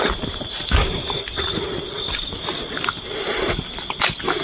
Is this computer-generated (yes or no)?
no